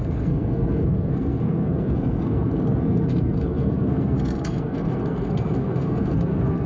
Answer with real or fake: fake